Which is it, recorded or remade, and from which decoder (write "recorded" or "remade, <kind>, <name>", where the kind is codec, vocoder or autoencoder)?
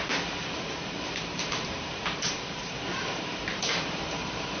remade, vocoder, BigVGAN v2